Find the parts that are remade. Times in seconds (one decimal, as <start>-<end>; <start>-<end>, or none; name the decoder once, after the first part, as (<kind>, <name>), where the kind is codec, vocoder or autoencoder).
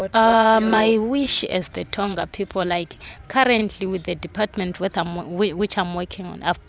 0.0-3.2 (vocoder, WaveNeXt)